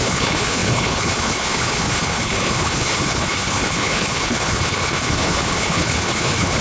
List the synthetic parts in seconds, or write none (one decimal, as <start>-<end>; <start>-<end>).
0.0-6.6